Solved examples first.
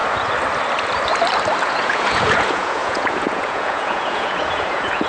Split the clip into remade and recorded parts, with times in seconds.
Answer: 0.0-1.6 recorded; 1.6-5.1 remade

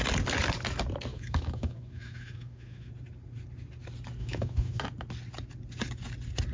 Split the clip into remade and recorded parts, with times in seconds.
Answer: 0.0-1.1 recorded; 1.1-2.9 remade; 2.9-4.2 recorded; 4.2-4.8 remade; 4.8-6.5 recorded

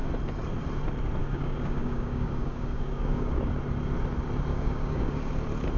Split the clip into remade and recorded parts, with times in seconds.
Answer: 0.0-1.2 recorded; 1.2-3.5 remade; 3.5-4.5 recorded; 4.5-5.3 remade; 5.3-5.8 recorded

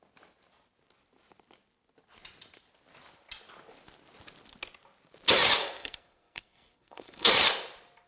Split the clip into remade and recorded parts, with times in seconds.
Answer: 0.0-5.6 recorded; 5.6-7.3 remade; 7.3-8.1 recorded

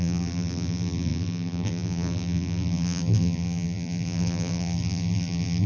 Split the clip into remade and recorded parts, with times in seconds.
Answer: 0.0-5.7 remade

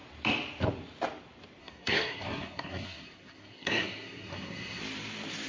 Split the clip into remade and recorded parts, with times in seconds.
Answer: 0.0-1.6 recorded; 1.6-4.8 remade; 4.8-5.5 recorded